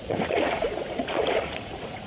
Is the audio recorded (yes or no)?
no